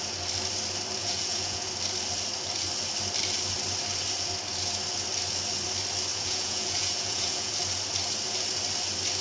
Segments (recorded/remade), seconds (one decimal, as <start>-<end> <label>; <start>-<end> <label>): 0.0-1.0 recorded; 1.0-1.7 remade; 1.7-6.1 recorded; 6.1-7.5 remade; 7.5-9.2 recorded